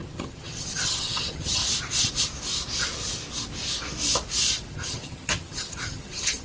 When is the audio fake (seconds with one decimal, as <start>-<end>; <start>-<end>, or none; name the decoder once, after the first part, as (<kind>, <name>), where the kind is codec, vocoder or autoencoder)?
0.0-1.6 (vocoder, HiFi-GAN); 4.7-6.4